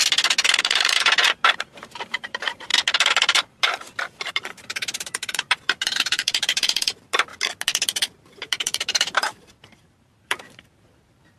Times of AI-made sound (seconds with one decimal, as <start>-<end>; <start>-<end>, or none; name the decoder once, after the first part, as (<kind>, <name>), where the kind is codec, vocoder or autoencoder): 0.6-2.7 (vocoder, BigVGAN v2); 4.3-7.3; 8.2-11.4